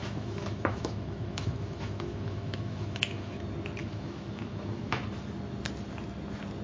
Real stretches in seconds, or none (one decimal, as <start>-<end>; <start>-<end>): 3.4-3.8; 5.0-6.6